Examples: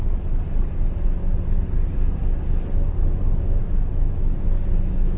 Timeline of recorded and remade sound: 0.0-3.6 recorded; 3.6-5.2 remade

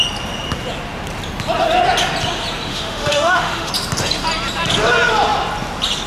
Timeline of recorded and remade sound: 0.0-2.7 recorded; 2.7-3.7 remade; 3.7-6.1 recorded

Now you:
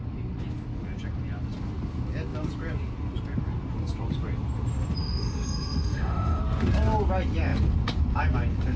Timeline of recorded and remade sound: 0.0-5.0 recorded; 5.0-6.4 remade; 6.4-8.8 recorded

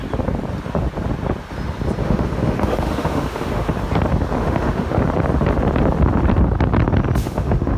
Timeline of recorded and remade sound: 0.0-2.0 recorded; 2.0-3.7 remade; 3.7-4.4 recorded; 4.4-5.0 remade; 5.0-7.2 recorded; 7.2-7.8 remade

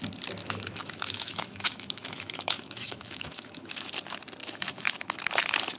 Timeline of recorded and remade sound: 0.0-0.4 recorded; 0.4-3.9 remade; 3.9-4.4 recorded; 4.4-4.9 remade; 4.9-5.8 recorded

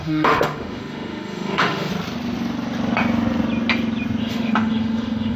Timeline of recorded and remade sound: 0.0-1.9 remade; 1.9-4.2 recorded; 4.2-5.4 remade

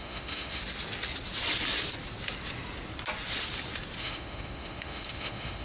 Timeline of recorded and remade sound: 0.0-0.6 remade; 0.6-4.0 recorded; 4.0-5.6 remade